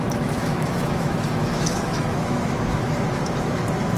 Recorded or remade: remade